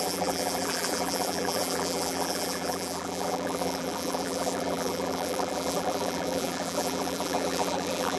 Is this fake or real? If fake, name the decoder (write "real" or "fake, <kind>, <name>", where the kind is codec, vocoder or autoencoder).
fake, vocoder, BigVGAN v2